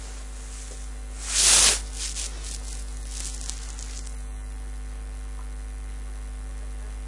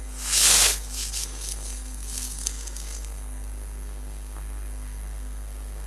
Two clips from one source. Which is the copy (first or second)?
second